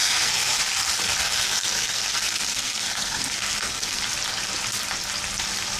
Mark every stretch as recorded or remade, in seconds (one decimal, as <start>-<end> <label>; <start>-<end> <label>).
0.0-0.6 remade; 0.6-1.2 recorded; 1.2-4.0 remade; 4.0-5.8 recorded